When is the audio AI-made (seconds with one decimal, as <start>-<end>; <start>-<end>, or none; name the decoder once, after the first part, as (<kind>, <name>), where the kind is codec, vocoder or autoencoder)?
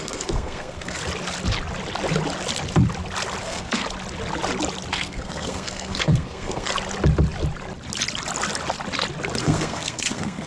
0.0-1.0 (codec, SNAC); 3.4-3.8; 4.9-6.7; 9.4-10.5